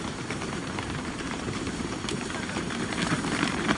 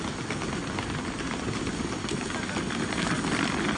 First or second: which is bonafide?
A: second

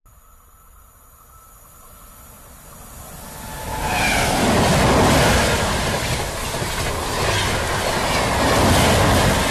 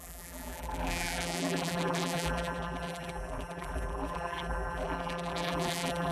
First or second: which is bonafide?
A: first